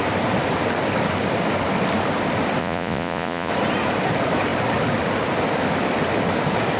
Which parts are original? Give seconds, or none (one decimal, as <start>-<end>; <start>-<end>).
0.0-2.6; 3.5-6.8